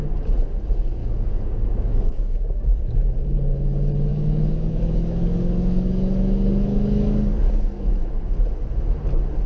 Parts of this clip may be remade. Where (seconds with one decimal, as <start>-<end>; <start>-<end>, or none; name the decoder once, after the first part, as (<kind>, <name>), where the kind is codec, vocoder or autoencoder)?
1.0-2.7 (codec, DAC); 4.1-8.1